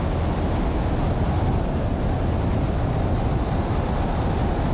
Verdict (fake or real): real